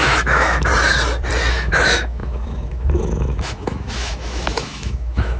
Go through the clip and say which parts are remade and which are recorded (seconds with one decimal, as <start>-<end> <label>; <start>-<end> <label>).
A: 0.0-0.7 remade; 0.7-1.5 recorded; 1.5-5.4 remade